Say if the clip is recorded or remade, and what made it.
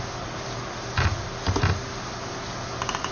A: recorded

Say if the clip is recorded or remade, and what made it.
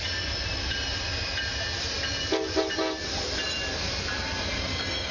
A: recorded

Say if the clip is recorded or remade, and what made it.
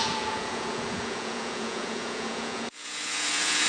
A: remade, vocoder, Vocos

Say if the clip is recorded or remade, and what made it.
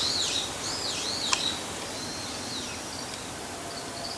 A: recorded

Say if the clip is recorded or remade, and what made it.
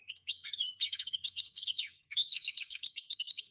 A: remade, codec, SNAC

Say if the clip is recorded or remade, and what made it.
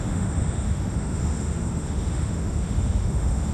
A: remade, autoencoder, DAC-VAE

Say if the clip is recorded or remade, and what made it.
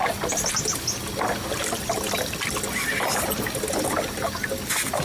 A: recorded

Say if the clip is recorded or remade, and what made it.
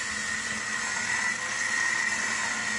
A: recorded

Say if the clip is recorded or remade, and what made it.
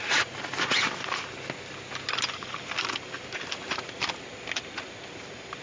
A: recorded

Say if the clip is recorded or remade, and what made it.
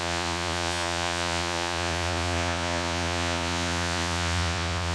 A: remade, vocoder, Vocos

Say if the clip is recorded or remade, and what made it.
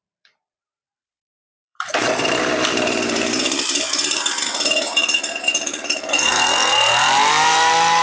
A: remade, vocoder, BigVGAN v2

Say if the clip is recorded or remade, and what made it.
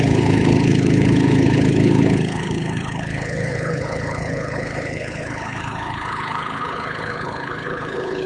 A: remade, codec, HILCodec